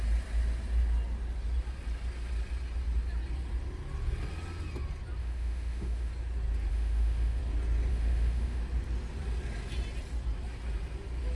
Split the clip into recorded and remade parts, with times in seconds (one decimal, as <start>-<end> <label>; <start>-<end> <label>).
0.0-5.2 recorded; 5.2-6.1 remade; 6.1-6.7 recorded; 6.7-7.4 remade; 7.4-7.9 recorded; 7.9-8.6 remade; 8.6-11.4 recorded